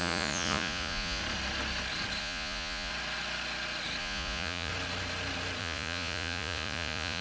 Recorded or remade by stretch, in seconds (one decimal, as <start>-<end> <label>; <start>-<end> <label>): 0.0-1.2 remade; 1.2-2.2 recorded; 2.2-2.9 remade; 2.9-4.0 recorded; 4.0-4.7 remade; 4.7-5.6 recorded; 5.6-7.2 remade